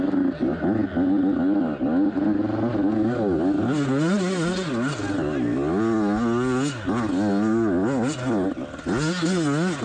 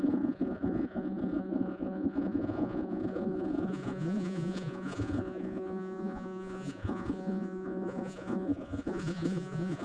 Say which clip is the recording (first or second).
first